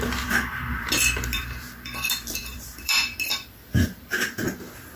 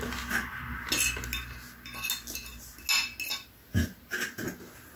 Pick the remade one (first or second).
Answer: first